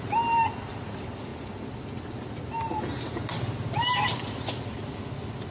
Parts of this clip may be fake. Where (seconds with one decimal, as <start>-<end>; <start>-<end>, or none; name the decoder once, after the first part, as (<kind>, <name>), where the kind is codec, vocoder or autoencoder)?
none